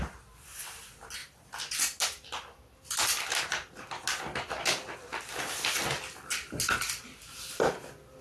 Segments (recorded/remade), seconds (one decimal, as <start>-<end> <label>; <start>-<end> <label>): 0.0-8.2 recorded